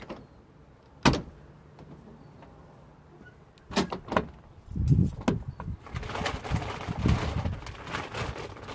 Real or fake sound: real